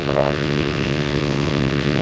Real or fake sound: fake